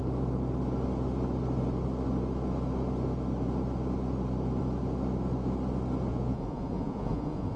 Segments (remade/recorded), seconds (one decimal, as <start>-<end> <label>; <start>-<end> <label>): 0.0-6.1 recorded; 6.1-7.6 remade